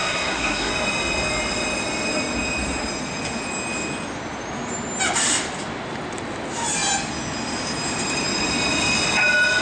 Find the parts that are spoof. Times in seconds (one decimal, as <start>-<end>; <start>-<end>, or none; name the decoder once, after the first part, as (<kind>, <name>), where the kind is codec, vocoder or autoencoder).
0.0-0.7 (codec, SNAC)